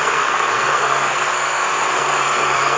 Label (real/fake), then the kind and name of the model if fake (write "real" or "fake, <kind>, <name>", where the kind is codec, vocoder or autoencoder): fake, codec, SNAC